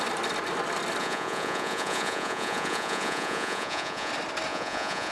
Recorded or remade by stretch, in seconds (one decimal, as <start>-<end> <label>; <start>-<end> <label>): 0.0-1.0 recorded; 1.0-4.1 remade; 4.1-4.5 recorded; 4.5-5.1 remade